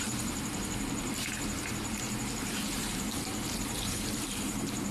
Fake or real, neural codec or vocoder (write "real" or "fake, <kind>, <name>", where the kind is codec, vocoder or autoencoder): fake, vocoder, BigVGAN v2